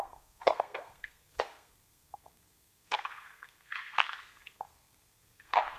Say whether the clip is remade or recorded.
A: remade